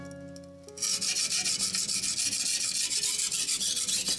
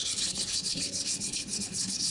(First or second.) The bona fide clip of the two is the first